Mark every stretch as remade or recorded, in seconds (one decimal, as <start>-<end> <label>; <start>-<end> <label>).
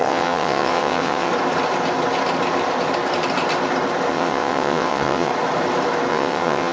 0.0-1.3 remade; 1.3-4.1 recorded; 4.1-5.3 remade; 5.3-6.1 recorded; 6.1-6.7 remade